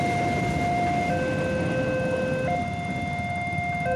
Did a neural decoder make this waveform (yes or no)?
no